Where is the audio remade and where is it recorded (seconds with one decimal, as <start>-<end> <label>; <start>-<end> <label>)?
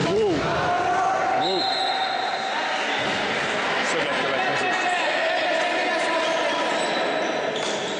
0.0-8.0 recorded